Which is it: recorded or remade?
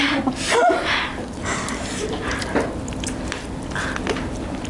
recorded